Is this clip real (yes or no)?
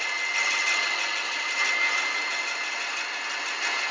yes